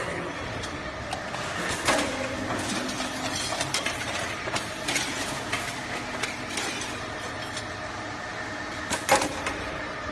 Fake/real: real